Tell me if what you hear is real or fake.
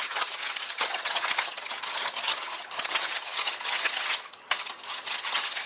fake